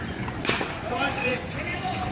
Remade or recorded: remade